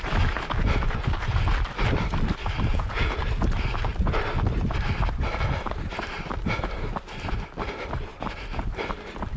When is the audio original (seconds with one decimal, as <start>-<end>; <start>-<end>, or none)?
0.0-2.7; 3.2-9.4